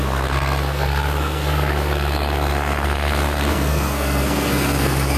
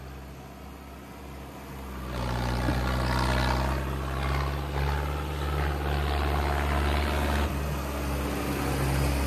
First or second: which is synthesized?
first